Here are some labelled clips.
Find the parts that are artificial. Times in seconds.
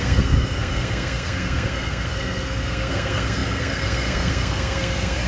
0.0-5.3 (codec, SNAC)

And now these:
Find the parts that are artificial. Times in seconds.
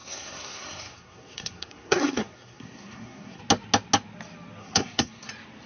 0.0-3.4 (codec, SNAC); 4.6-5.3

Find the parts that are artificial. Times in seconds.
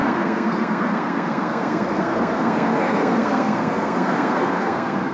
0.0-5.1 (codec, SNAC)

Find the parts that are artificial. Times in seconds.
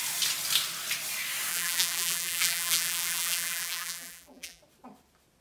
1.5-4.6 (vocoder, BigVGAN v2)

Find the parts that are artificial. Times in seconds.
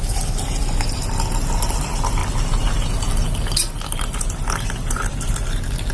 none